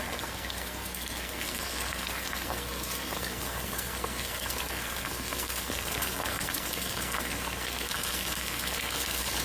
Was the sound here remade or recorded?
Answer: remade